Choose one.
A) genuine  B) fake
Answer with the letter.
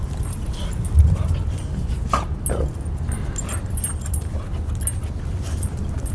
A